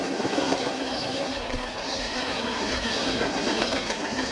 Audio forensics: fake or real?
fake